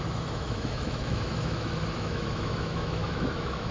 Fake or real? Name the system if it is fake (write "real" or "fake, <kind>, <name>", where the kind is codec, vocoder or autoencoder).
fake, autoencoder, DAC-VAE